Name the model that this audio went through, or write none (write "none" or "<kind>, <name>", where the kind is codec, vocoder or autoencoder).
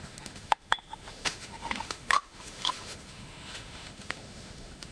autoencoder, DAC-VAE